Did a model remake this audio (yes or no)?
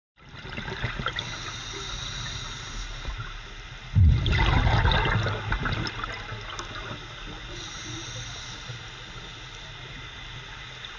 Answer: no